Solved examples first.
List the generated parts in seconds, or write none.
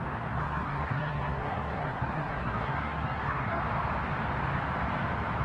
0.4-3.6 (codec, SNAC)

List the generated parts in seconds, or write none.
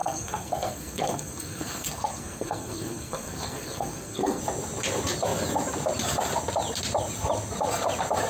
0.0-4.4 (codec, SNAC)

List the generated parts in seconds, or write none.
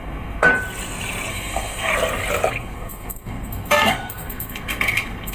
0.0-0.5 (codec, SNAC); 1.3-1.9; 2.5-5.3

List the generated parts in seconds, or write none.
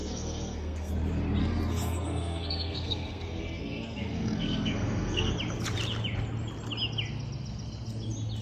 0.0-0.9 (codec, SNAC); 1.4-5.3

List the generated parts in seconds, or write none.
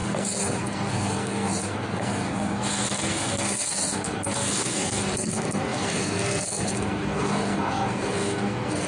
0.0-8.9 (codec, SNAC)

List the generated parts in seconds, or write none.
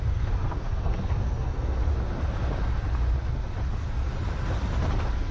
0.0-1.9 (codec, SNAC)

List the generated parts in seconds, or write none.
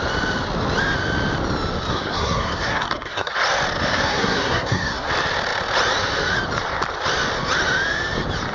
1.9-3.3 (codec, SNAC); 3.9-5.1